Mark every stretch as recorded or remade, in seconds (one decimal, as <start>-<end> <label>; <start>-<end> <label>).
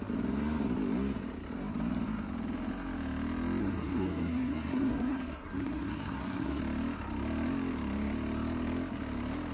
0.0-3.6 recorded; 3.6-6.6 remade; 6.6-9.5 recorded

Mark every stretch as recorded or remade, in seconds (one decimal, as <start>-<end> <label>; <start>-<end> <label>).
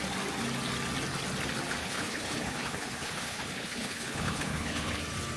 0.0-1.8 recorded; 1.8-5.0 remade; 5.0-5.4 recorded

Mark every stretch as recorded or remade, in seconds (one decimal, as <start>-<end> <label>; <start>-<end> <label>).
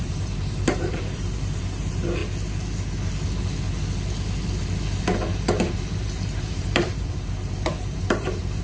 0.0-2.2 remade; 2.2-5.0 recorded; 5.0-8.6 remade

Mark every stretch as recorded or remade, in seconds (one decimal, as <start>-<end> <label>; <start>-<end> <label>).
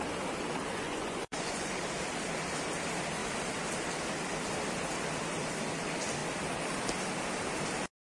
0.0-0.7 recorded; 0.7-1.7 remade; 1.7-8.1 recorded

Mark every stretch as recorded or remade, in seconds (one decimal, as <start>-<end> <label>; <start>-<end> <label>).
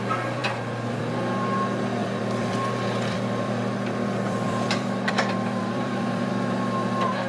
0.0-2.0 recorded; 2.0-6.3 remade; 6.3-7.3 recorded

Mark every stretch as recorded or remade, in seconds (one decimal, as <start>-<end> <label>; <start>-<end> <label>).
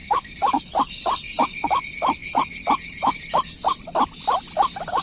0.0-1.8 remade; 1.8-5.0 recorded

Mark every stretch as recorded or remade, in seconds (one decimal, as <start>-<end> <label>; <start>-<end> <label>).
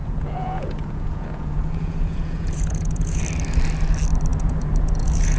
0.0-3.2 remade; 3.2-4.3 recorded; 4.3-5.4 remade